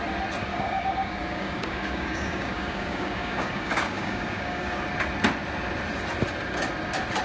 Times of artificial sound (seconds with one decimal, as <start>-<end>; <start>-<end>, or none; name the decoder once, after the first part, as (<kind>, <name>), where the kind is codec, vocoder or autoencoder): 0.5-4.8 (codec, DAC)